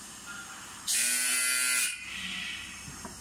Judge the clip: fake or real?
real